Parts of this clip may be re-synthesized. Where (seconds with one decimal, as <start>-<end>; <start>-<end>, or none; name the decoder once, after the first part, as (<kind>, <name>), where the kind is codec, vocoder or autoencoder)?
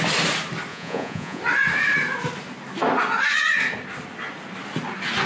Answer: 0.7-1.4 (vocoder, Vocos)